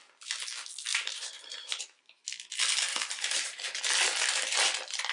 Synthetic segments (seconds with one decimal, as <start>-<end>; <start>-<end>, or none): 0.9-2.0; 2.9-3.8